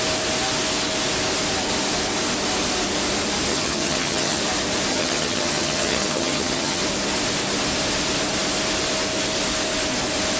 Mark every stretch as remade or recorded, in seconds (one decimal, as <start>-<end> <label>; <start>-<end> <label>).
0.0-3.5 recorded; 3.5-4.4 remade; 4.4-4.9 recorded; 4.9-6.8 remade; 6.8-10.4 recorded